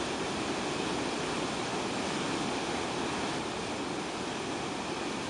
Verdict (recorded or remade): recorded